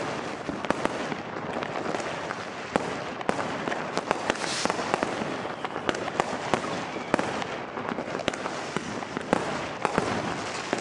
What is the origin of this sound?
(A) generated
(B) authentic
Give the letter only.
B